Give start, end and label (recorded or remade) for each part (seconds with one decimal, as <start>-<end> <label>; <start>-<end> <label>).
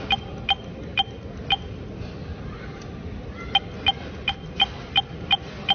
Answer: 0.0-5.7 recorded